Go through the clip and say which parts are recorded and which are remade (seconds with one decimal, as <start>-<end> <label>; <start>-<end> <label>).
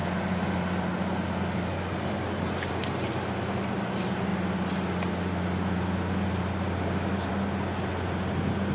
0.0-8.7 recorded